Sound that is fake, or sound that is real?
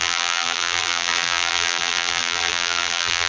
fake